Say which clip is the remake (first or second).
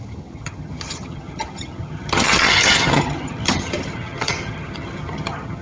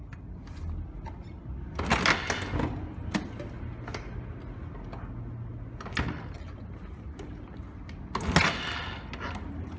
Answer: first